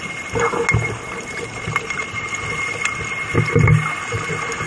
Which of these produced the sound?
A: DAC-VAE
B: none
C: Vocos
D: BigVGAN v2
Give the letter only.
B